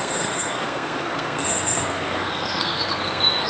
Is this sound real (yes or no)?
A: no